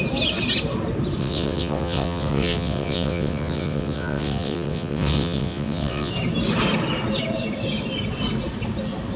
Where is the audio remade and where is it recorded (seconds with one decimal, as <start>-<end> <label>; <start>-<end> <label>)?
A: 0.0-1.2 recorded; 1.2-6.1 remade; 6.1-9.2 recorded